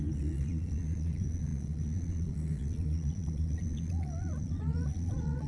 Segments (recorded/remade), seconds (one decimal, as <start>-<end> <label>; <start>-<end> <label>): 0.0-5.5 remade